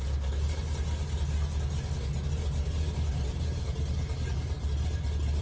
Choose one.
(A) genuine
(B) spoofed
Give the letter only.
A